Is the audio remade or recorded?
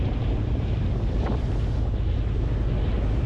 recorded